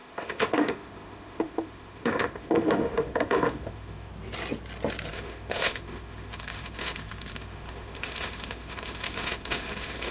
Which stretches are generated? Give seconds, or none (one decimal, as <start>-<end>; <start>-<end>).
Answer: 0.0-4.1; 5.1-10.1